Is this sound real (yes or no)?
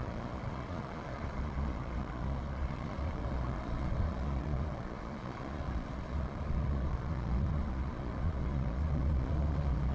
no